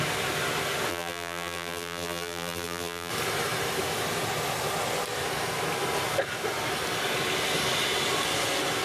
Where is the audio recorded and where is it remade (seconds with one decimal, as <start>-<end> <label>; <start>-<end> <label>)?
0.0-0.9 recorded; 0.9-3.1 remade; 3.1-8.8 recorded